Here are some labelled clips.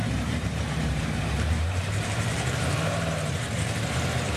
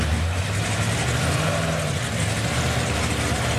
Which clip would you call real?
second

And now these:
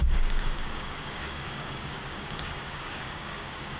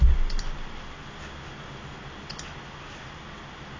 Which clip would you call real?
second